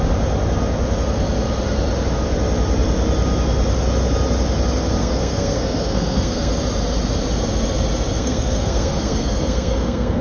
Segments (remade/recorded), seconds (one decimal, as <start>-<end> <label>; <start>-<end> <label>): 0.0-5.0 recorded; 5.0-6.5 remade; 6.5-8.1 recorded; 8.1-10.2 remade